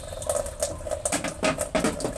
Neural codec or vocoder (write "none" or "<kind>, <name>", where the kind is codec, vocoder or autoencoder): none